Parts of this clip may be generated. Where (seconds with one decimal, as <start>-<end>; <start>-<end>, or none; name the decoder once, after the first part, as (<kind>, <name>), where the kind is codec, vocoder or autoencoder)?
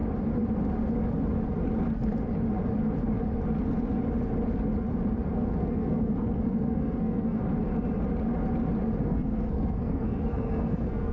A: 5.3-7.4 (codec, SNAC); 9.0-11.1